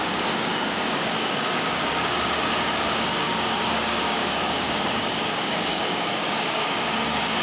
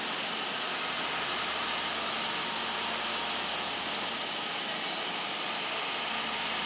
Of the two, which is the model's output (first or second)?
first